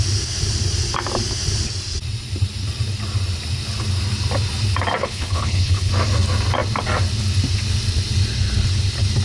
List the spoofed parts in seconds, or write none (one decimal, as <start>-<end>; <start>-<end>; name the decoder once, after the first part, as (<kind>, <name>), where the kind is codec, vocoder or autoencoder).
5.0-5.9 (codec, HILCodec)